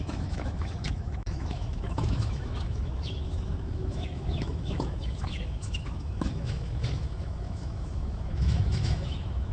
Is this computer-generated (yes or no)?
yes